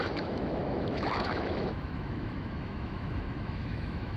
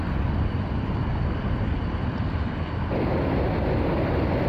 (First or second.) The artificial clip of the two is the first